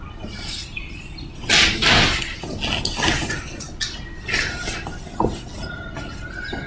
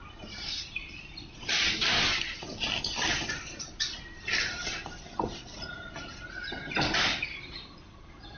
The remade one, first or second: second